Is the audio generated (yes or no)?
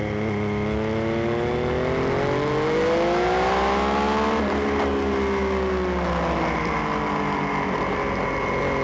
no